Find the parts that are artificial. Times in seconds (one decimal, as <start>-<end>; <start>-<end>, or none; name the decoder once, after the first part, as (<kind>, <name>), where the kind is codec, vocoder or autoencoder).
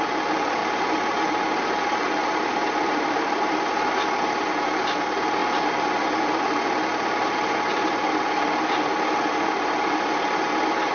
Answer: 0.6-1.3 (vocoder, BigVGAN v2); 2.2-3.9